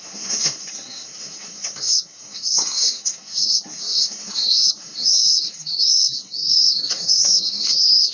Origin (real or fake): fake